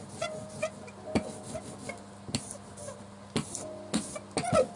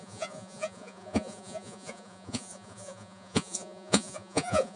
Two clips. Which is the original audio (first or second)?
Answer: first